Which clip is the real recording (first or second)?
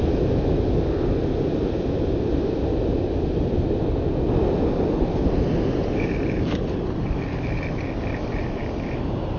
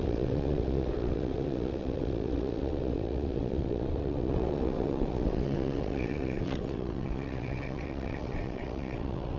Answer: first